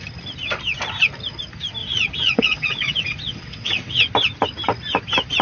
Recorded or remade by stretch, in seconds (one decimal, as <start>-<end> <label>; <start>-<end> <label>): 0.0-1.8 recorded; 1.8-4.1 remade; 4.1-5.4 recorded